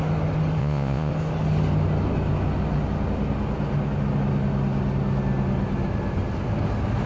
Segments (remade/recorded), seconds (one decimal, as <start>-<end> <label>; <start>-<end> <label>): 0.0-0.6 recorded; 0.6-1.1 remade; 1.1-7.1 recorded